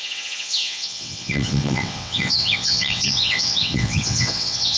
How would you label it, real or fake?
fake